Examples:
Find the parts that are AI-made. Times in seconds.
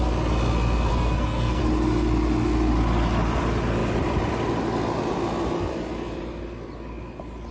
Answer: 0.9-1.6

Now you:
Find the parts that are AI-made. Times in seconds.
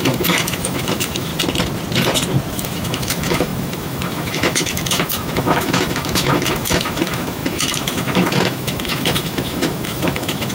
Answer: 0.0-1.3; 2.5-10.5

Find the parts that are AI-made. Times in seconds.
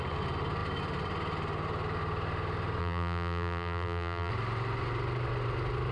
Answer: 2.8-4.3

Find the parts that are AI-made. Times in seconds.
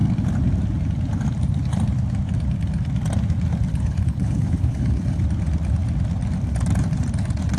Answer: 3.7-5.2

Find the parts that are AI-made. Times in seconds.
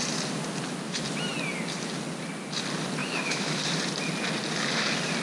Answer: 3.0-3.6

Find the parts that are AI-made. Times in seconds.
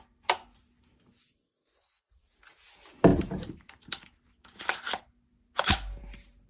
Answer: none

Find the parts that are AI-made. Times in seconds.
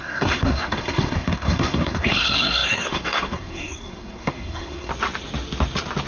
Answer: 0.0-4.9